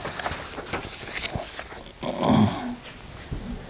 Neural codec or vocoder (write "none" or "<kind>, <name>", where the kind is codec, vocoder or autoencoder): none